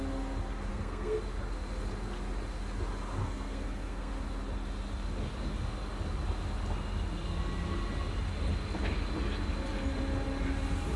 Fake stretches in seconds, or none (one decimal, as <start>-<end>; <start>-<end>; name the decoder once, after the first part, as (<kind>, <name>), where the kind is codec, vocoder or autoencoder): 0.7-1.2 (codec, SNAC); 3.2-4.1